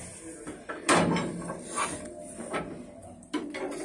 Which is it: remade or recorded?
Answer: recorded